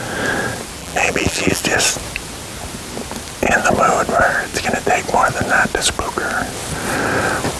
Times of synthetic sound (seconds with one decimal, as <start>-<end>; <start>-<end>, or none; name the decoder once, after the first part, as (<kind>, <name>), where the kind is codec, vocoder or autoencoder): 0.8-1.6 (vocoder, BigVGAN v2)